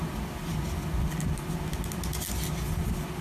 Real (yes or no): yes